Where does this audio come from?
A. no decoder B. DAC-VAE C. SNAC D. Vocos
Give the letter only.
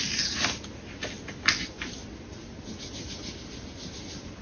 A